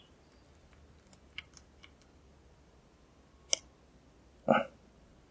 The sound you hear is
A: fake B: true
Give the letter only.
B